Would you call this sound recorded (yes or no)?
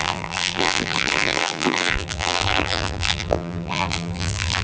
no